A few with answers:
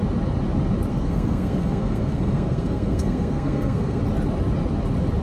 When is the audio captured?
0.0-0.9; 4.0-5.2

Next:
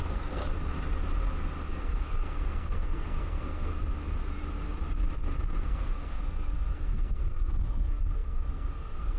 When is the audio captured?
0.4-1.8; 3.7-5.6

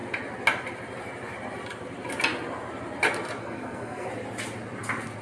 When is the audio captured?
0.0-3.4; 4.1-5.2

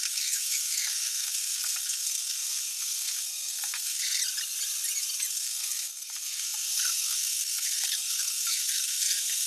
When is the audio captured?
4.2-5.3

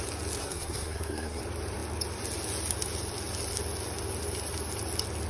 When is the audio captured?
0.0-0.4; 1.4-5.3